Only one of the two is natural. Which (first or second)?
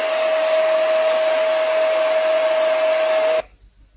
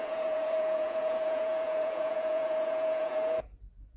first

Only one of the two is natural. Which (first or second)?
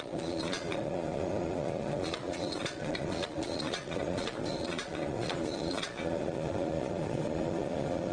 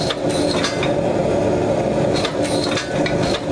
second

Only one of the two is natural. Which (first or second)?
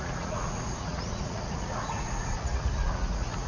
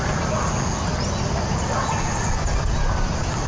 second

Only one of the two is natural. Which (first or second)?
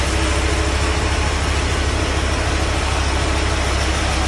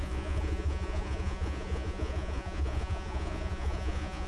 first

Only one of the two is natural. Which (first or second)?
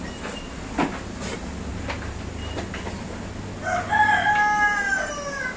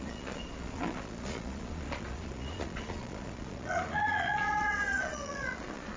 first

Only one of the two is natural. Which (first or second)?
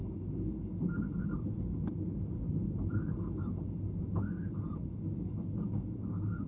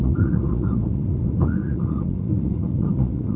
first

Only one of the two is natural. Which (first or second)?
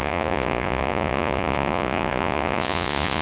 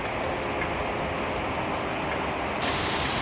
second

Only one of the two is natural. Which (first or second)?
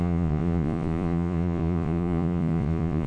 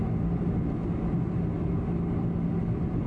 second